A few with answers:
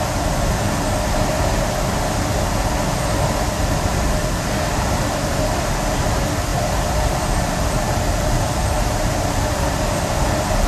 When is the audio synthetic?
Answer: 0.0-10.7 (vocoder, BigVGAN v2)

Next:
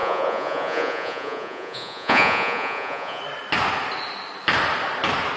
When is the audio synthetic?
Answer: 0.0-3.2 (vocoder, Vocos)

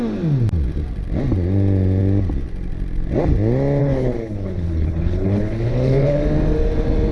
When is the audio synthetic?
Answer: 3.8-6.2 (codec, HILCodec)

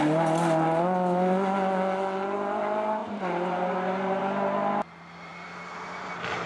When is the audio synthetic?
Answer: 3.0-4.2 (vocoder, BigVGAN v2)